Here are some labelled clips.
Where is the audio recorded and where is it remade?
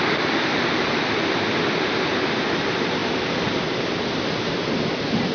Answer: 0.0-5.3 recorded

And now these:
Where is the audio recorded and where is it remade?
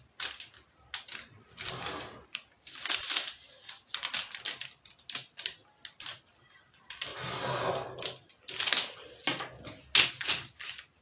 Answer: 0.0-11.0 recorded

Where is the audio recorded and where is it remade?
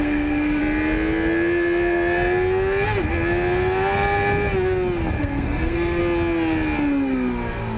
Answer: 0.0-0.6 remade; 0.6-5.2 recorded; 5.2-6.0 remade; 6.0-7.8 recorded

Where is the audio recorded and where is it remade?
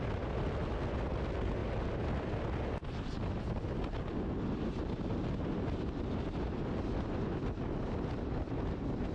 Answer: 0.0-9.1 recorded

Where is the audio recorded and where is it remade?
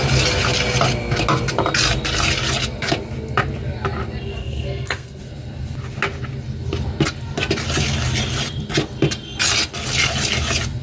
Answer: 0.0-4.4 recorded; 4.4-5.2 remade; 5.2-10.8 recorded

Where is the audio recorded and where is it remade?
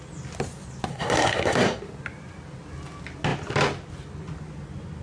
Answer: 0.0-0.9 recorded; 0.9-1.8 remade; 1.8-5.0 recorded